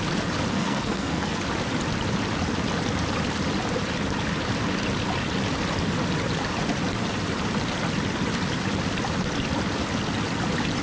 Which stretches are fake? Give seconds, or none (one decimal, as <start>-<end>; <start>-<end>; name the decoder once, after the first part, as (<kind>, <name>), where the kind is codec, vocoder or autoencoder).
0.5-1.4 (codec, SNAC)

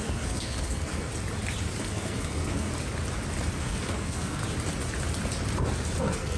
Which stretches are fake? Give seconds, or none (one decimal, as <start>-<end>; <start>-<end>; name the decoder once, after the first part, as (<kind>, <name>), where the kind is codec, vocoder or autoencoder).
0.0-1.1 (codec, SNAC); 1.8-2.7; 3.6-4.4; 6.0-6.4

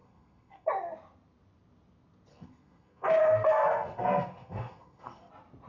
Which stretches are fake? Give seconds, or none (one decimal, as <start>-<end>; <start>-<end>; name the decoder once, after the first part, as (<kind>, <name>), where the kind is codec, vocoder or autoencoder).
0.0-0.7 (codec, SNAC); 2.3-5.3

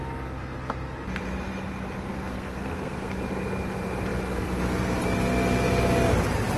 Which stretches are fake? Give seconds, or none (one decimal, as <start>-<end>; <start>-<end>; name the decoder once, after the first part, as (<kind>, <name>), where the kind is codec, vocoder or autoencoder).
2.1-3.1 (codec, SNAC)